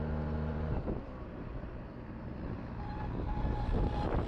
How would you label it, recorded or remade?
remade